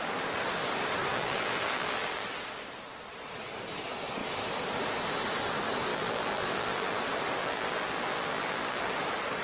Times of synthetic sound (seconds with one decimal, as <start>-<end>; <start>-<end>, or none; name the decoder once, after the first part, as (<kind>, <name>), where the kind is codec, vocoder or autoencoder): 1.1-2.3 (vocoder, BigVGAN v2); 5.9-7.0; 7.4-8.9

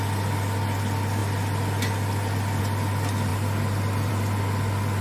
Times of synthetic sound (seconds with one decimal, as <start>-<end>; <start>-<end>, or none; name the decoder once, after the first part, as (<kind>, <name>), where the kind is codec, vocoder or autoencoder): 3.3-4.1 (vocoder, BigVGAN v2)

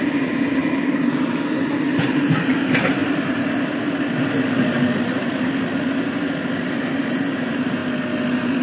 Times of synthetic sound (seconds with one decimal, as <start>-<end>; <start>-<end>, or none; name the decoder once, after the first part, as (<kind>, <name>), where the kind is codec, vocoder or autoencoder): 0.0-3.0 (vocoder, BigVGAN v2); 6.8-7.8

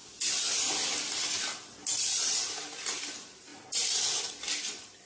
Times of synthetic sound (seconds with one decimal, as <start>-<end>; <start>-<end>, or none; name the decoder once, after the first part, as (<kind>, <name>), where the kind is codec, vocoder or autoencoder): none